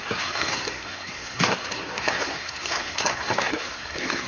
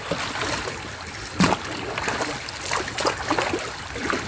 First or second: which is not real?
first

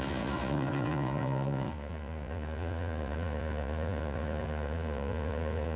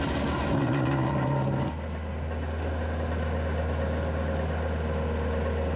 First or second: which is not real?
first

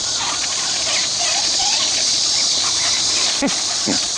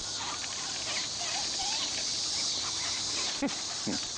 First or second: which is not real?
first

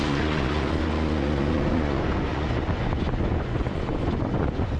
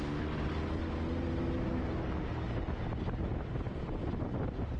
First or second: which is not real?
first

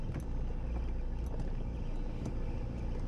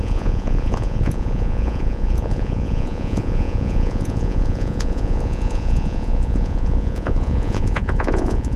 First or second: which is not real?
second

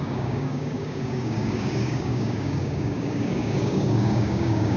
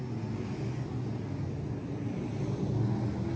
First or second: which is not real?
first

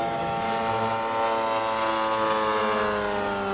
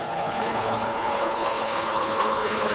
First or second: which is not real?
second